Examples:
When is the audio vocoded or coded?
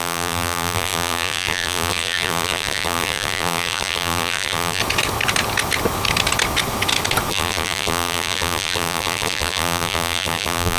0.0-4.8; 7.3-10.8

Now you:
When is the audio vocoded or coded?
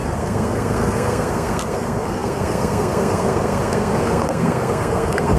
0.0-5.4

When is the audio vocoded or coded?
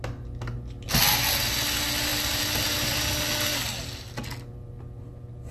none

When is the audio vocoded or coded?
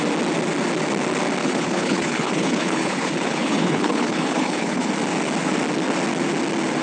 1.4-4.9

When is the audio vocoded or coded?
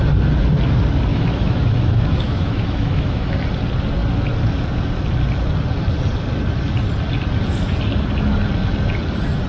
1.1-3.3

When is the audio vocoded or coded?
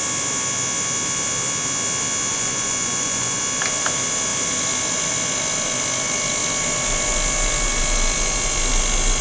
2.3-3.4